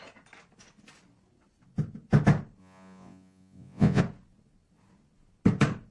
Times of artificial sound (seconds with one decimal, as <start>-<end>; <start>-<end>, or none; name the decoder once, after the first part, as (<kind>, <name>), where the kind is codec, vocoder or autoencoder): 2.6-4.0 (vocoder, Vocos)

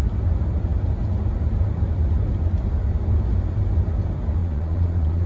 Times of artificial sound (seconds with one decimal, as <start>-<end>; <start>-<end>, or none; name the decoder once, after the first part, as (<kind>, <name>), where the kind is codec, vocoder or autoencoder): 4.4-5.3 (vocoder, Vocos)

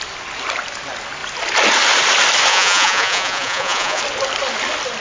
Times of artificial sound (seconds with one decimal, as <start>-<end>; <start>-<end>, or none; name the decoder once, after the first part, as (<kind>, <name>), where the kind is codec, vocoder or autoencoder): 2.5-4.0 (vocoder, Vocos)